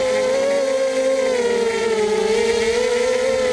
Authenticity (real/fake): real